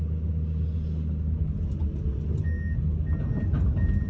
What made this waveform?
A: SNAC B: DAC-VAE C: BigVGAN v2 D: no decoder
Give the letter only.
D